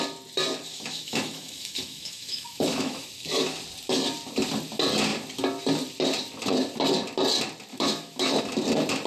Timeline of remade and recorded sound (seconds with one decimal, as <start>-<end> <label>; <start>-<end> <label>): 0.0-0.7 recorded; 0.7-3.4 remade; 3.4-7.7 recorded; 7.7-8.4 remade; 8.4-9.1 recorded